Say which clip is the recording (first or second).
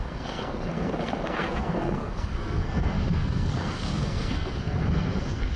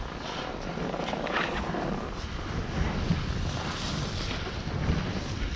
second